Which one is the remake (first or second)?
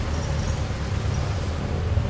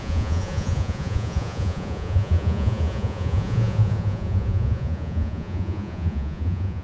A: second